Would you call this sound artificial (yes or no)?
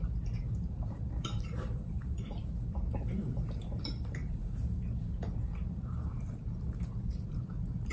yes